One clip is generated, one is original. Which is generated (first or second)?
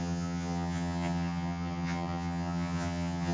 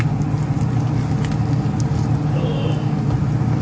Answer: first